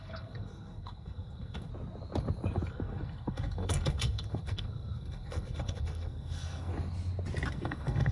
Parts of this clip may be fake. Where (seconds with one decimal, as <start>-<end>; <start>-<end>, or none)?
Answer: 0.0-1.7; 2.7-6.7; 7.5-8.1